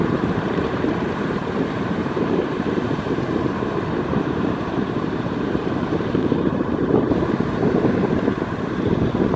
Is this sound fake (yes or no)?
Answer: yes